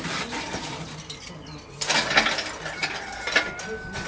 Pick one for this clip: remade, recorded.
recorded